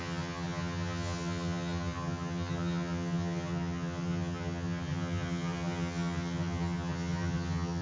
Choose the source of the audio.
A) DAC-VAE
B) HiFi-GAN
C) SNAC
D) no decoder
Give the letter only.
B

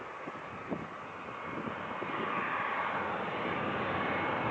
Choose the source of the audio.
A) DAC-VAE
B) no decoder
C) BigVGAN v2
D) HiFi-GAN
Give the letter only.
B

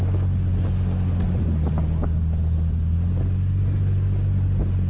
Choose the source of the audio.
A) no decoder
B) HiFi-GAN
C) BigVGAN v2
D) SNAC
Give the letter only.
A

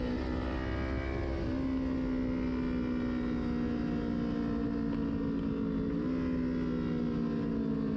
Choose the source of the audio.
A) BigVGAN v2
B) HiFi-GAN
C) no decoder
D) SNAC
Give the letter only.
C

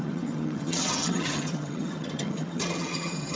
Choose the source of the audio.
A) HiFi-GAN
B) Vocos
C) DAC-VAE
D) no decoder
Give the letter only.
A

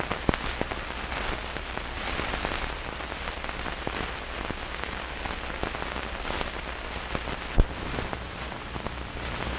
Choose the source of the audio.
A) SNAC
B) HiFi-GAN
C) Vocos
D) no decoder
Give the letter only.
D